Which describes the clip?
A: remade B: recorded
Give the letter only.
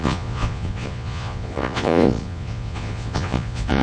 A